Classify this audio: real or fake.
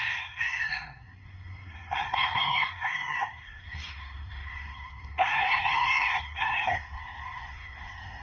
fake